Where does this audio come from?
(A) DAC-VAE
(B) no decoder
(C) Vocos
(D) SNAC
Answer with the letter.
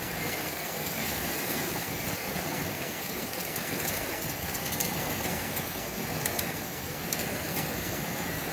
D